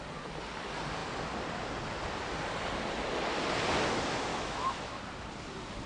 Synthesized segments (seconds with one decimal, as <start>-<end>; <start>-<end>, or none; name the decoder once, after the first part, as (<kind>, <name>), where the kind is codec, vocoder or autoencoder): 4.3-5.0 (autoencoder, DAC-VAE)